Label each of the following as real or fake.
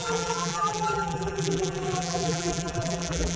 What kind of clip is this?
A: fake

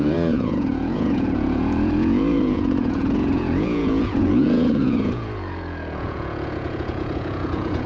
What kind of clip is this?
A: fake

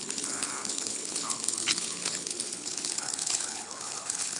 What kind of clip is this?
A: fake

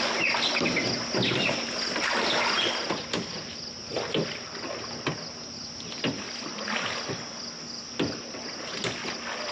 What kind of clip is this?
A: real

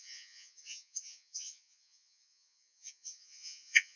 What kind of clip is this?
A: fake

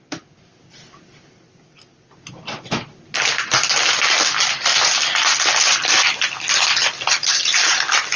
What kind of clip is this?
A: real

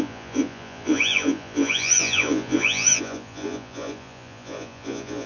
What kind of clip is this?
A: fake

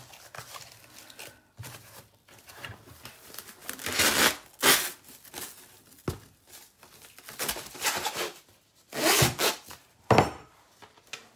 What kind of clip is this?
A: real